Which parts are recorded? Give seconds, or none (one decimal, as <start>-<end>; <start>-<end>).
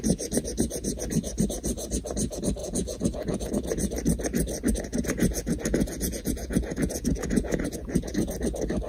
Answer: 0.0-2.6; 3.5-4.9; 8.3-8.9